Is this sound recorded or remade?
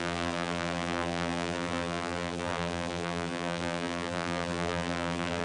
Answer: remade